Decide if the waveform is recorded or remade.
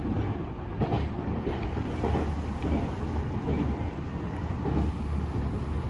recorded